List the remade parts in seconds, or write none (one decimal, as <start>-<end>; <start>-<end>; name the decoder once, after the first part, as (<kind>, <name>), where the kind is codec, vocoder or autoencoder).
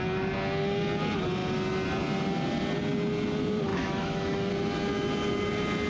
3.7-4.5 (autoencoder, DAC-VAE)